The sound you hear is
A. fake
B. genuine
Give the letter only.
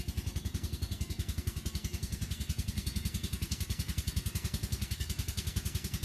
A